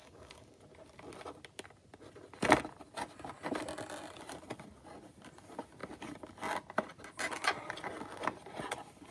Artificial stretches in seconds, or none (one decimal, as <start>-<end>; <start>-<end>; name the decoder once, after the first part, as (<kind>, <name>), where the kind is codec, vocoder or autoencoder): 0.0-0.6 (codec, DAC)